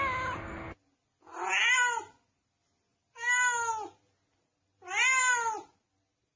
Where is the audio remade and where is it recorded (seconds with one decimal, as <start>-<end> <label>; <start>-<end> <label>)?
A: 0.0-6.4 recorded